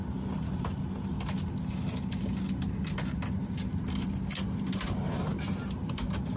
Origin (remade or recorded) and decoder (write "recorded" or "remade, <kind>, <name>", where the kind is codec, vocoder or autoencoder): recorded